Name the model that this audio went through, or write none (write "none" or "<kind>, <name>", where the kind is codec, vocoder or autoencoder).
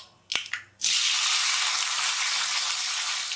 none